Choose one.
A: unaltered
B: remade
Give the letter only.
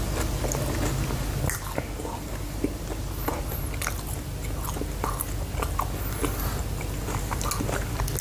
A